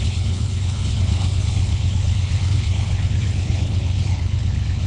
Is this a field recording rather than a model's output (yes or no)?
no